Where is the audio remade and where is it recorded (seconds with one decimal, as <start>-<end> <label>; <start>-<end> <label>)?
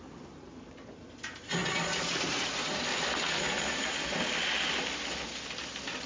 0.0-6.1 recorded